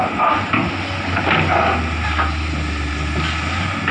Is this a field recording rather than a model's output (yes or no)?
yes